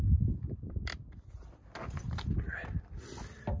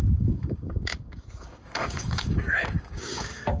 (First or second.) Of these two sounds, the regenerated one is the second